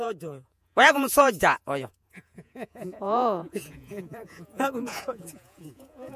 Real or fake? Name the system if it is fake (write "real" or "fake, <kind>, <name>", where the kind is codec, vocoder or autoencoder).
fake, vocoder, Vocos